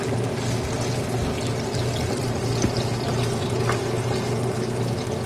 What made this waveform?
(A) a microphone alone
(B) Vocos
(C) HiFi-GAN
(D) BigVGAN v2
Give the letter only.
A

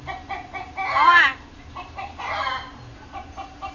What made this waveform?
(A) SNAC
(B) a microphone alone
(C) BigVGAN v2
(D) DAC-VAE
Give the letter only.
C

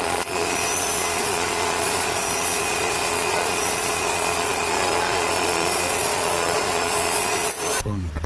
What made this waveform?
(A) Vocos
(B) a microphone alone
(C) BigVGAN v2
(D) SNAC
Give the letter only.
A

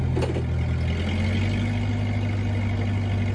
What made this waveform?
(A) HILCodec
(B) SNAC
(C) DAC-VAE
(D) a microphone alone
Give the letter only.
D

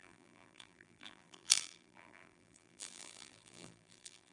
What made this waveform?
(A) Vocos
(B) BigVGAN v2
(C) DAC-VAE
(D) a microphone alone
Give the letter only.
B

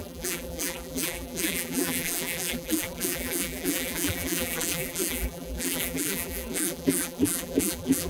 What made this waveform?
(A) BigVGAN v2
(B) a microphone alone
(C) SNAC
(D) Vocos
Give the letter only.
A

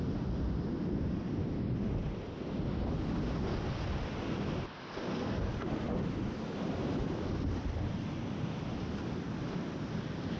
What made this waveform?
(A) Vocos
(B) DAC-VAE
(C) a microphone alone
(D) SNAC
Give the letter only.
C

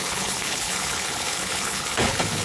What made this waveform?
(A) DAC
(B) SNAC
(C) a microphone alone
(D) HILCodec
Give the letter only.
D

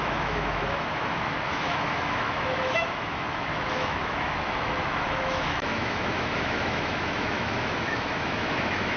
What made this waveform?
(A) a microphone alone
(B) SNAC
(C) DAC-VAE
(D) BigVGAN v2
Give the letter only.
C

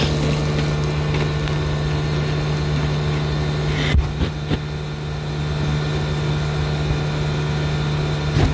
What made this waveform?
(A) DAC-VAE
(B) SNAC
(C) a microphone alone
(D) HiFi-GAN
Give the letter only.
C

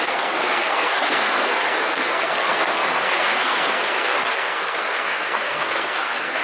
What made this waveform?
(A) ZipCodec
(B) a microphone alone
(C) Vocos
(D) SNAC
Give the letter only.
D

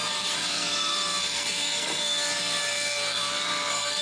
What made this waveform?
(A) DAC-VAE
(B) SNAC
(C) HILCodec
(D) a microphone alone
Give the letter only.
B